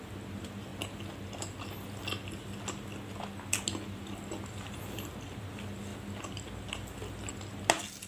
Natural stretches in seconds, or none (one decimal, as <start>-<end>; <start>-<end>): 0.0-8.1